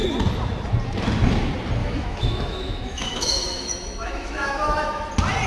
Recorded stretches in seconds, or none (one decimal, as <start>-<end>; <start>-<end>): 0.0-1.8; 5.1-5.5